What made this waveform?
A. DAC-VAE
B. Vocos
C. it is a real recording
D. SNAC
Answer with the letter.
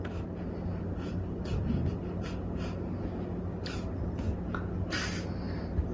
C